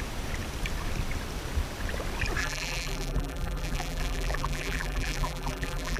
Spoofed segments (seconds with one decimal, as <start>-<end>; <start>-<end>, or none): 2.4-6.0